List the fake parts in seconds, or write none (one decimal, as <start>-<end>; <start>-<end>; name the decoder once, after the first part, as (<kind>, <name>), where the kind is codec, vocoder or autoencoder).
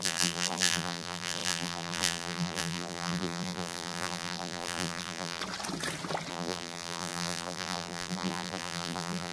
0.0-5.4 (vocoder, BigVGAN v2); 6.3-9.3